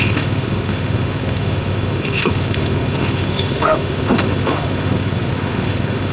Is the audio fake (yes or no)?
yes